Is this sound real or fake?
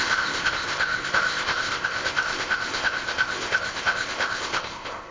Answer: fake